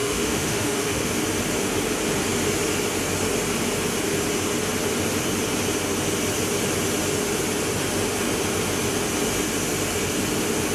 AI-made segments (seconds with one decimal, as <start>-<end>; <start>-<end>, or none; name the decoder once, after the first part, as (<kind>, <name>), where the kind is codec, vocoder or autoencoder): 0.0-1.1 (autoencoder, DAC-VAE)